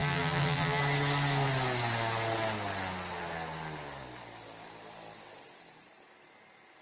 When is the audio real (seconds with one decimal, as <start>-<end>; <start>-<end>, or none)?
0.8-6.8

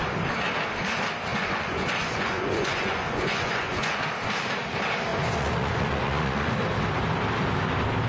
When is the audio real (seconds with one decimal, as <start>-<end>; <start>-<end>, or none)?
0.0-1.3; 4.0-5.1; 6.5-8.1

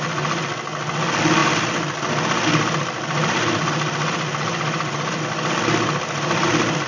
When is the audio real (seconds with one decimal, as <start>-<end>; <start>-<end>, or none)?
0.0-6.9

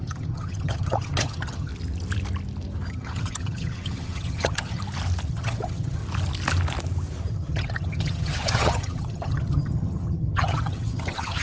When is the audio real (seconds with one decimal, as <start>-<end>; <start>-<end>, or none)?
1.7-2.9; 4.8-5.3; 6.0-7.3

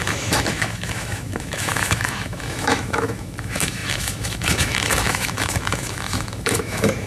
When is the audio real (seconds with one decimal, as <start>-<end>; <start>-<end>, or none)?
none

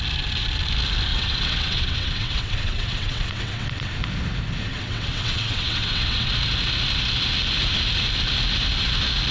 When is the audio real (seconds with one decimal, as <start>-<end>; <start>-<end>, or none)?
0.0-1.1; 3.9-4.7; 6.3-9.3